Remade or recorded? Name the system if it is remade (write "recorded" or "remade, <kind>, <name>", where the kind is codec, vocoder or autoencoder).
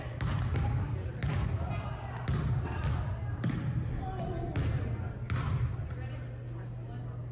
recorded